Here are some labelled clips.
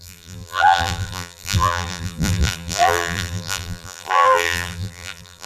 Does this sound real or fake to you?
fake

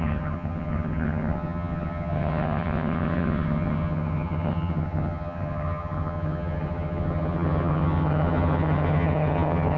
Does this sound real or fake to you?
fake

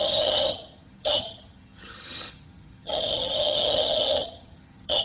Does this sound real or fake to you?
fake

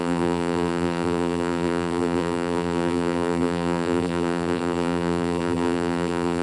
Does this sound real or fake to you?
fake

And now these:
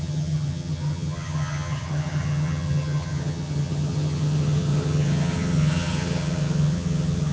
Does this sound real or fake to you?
fake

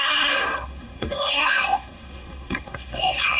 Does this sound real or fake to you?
fake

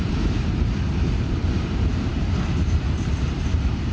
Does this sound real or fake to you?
fake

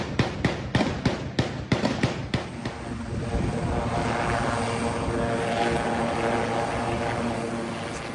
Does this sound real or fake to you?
real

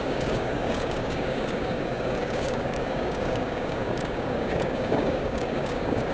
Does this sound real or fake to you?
fake